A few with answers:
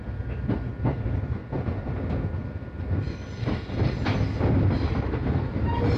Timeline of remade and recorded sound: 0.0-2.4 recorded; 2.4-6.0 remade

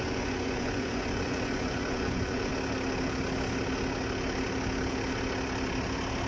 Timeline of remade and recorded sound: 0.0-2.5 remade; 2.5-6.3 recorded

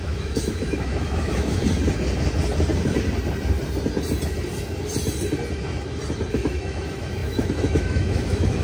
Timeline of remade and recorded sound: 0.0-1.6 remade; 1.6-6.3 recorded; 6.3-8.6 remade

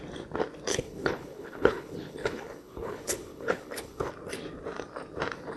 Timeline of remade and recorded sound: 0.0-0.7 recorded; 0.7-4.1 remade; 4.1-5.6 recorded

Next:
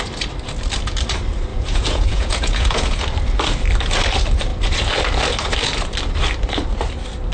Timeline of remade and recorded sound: 0.0-1.5 recorded; 1.5-3.0 remade; 3.0-7.3 recorded

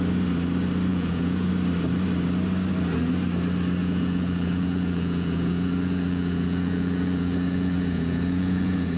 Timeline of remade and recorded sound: 0.0-0.9 recorded; 0.9-1.5 remade; 1.5-3.8 recorded; 3.8-9.0 remade